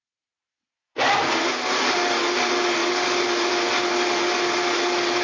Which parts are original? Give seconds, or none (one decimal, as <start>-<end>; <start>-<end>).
0.0-5.2